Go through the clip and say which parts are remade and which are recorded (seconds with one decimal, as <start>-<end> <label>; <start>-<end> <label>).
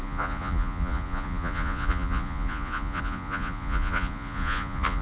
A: 0.0-5.0 remade